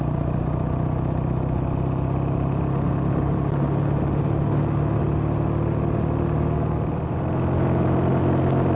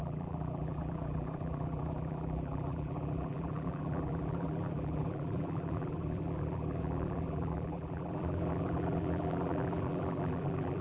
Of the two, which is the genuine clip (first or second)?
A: first